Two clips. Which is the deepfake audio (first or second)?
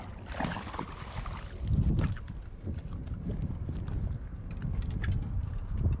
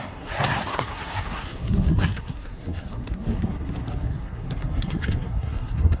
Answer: second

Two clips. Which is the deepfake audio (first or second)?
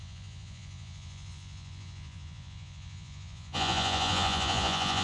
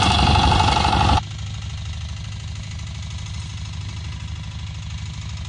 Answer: first